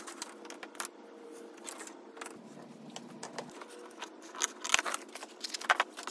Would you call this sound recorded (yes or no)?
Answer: yes